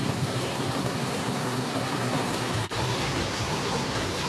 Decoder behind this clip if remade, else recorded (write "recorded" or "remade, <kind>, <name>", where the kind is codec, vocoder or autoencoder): remade, codec, SNAC